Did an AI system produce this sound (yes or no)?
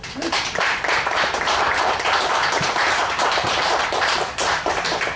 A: yes